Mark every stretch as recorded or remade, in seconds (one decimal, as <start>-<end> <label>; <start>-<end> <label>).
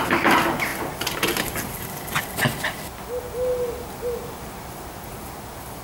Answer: 0.0-5.8 recorded